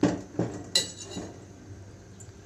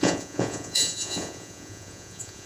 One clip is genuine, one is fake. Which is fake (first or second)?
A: second